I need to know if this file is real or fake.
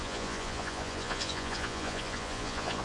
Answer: fake